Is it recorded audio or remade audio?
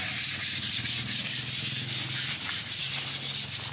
recorded